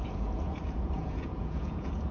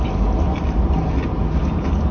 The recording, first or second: second